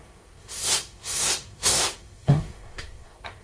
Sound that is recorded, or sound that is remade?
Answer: remade